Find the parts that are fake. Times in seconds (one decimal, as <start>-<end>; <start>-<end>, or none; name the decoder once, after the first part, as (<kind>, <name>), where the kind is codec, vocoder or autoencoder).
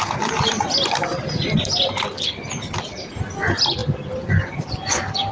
none